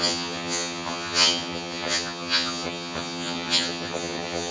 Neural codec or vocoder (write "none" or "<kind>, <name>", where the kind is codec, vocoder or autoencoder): vocoder, HiFi-GAN